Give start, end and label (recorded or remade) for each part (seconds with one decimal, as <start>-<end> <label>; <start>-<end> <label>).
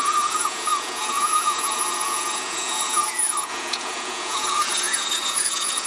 0.0-5.9 remade